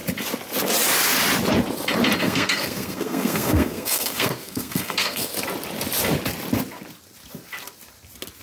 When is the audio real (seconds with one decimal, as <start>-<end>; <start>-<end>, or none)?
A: 0.0-2.2; 5.3-8.4